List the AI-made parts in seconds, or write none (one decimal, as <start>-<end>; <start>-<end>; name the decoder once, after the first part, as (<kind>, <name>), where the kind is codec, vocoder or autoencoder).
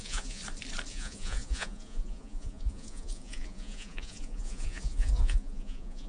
0.0-0.4 (vocoder, Vocos); 0.9-6.1